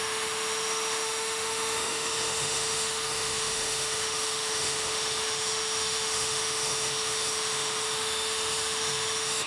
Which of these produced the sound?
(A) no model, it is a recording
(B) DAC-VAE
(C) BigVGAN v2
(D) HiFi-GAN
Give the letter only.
B